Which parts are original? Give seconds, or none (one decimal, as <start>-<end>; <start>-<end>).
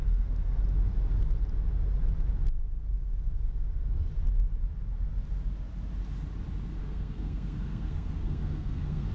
0.6-6.8